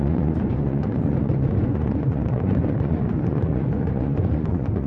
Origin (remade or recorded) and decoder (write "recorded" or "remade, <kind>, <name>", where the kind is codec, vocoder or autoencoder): remade, vocoder, Vocos